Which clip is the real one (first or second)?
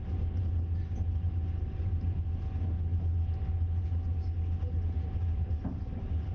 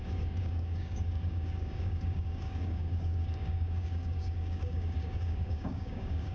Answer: first